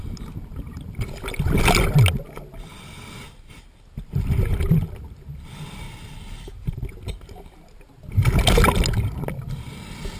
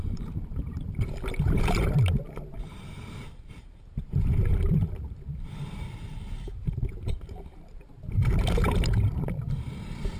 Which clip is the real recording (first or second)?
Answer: first